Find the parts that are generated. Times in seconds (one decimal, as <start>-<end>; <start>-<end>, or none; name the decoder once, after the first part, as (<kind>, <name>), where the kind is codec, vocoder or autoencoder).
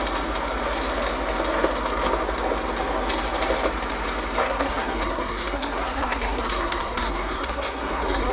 4.4-8.3 (codec, SNAC)